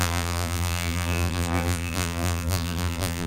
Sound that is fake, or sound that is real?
fake